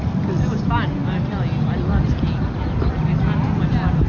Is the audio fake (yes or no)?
no